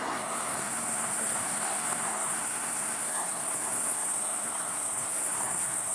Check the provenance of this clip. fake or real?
fake